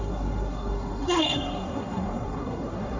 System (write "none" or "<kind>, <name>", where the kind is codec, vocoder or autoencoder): codec, SNAC